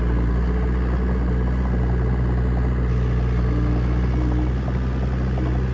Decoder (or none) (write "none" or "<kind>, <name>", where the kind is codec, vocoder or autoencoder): none